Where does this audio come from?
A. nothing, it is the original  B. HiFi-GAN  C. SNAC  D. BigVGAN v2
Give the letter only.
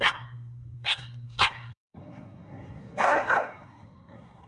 C